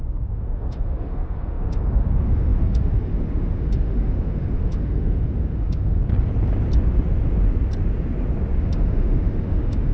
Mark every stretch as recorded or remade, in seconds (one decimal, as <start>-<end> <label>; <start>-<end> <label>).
0.0-6.0 remade; 6.0-8.6 recorded; 8.6-9.9 remade